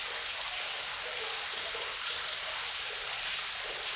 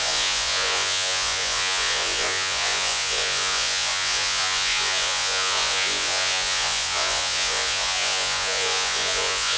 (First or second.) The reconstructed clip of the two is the second